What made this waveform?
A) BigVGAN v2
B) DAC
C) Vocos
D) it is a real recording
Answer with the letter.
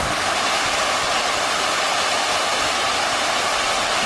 D